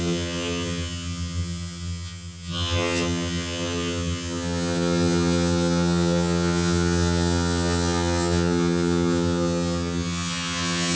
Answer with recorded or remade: remade